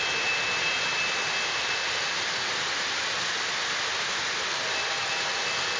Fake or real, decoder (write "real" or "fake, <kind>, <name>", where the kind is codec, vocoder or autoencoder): real